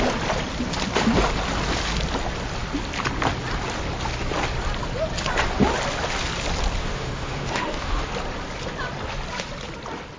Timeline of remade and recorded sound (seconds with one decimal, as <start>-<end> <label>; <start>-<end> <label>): 0.0-6.8 recorded; 6.8-8.1 remade; 8.1-10.2 recorded